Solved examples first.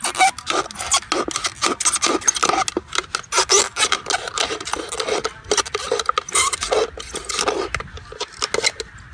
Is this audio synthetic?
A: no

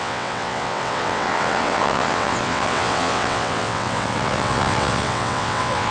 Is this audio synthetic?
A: yes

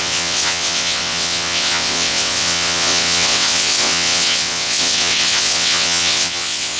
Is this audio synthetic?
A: yes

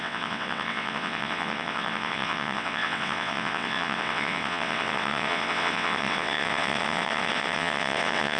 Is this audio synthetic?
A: yes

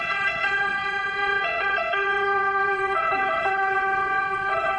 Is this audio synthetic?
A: yes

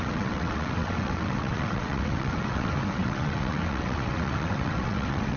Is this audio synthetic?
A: yes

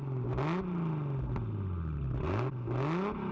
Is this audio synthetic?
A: no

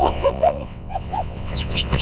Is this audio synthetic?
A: yes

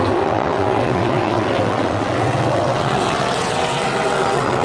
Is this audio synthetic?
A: yes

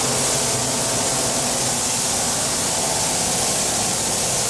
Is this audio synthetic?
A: no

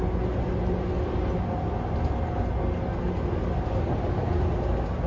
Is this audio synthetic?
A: no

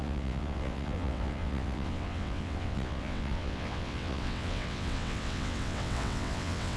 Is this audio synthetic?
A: yes